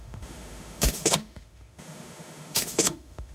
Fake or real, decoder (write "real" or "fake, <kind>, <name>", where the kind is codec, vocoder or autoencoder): fake, autoencoder, DAC-VAE